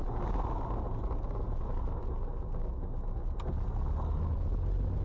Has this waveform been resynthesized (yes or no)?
no